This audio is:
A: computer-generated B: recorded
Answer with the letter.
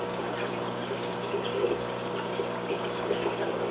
A